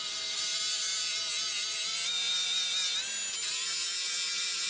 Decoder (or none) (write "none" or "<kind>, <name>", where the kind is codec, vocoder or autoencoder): none